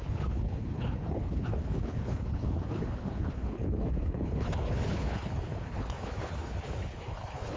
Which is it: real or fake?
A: fake